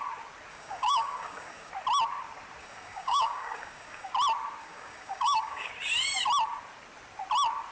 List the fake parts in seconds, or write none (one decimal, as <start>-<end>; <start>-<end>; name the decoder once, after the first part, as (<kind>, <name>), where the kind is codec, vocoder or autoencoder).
0.5-1.7 (codec, DAC); 2.6-4.1; 4.6-5.7